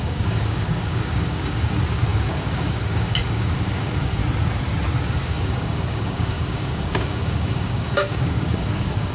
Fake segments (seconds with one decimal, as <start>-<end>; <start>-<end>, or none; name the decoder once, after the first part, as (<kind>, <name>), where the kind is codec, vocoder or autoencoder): 0.0-4.2 (codec, DAC); 5.1-9.1